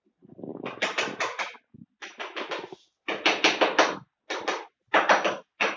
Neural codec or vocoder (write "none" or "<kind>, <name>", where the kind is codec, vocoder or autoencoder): none